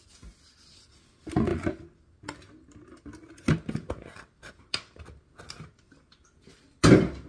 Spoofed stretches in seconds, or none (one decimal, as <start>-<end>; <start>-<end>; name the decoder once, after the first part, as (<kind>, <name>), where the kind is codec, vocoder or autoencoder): none